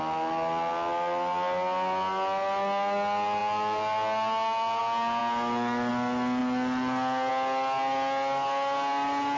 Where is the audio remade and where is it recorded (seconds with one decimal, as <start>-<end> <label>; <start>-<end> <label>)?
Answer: 0.0-9.4 recorded